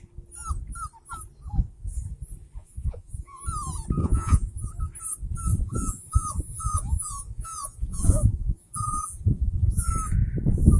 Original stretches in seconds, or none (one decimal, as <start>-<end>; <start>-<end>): 0.0-2.6; 3.4-4.0; 4.7-5.5; 9.9-10.8